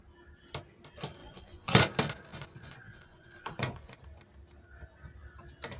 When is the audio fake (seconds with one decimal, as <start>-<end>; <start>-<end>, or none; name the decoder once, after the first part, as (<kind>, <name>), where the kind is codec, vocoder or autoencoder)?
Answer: 1.2-1.8 (vocoder, Vocos); 2.3-4.0